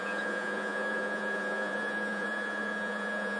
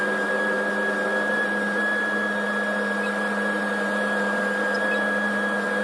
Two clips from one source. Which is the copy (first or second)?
first